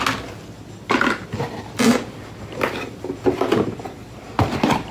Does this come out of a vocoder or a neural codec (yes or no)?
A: no